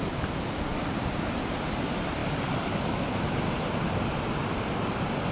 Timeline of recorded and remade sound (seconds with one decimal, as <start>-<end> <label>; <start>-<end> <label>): 0.0-5.3 recorded